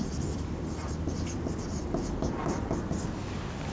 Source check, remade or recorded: recorded